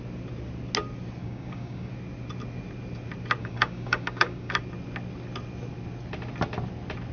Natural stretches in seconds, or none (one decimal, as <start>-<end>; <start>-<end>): 0.0-1.2; 1.9-3.4; 4.6-7.1

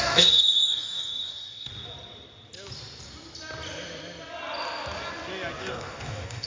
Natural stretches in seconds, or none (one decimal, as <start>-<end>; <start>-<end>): 1.7-5.6

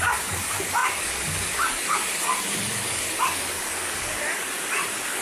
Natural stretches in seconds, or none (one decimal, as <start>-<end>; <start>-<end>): none

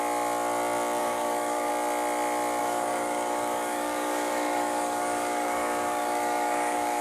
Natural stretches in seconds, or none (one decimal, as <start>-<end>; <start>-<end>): 0.0-1.0; 1.7-2.6

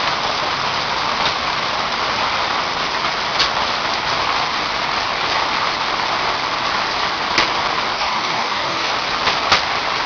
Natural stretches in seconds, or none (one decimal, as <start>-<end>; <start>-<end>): 0.0-7.9; 8.9-10.1